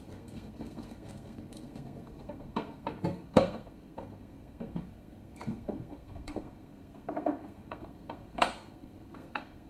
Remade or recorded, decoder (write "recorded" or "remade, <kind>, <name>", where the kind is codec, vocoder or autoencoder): remade, codec, SNAC